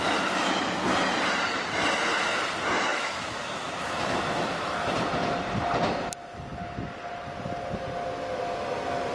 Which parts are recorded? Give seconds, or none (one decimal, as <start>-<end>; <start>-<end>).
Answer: 0.0-2.9; 4.9-9.1